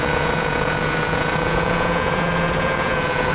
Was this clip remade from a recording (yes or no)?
yes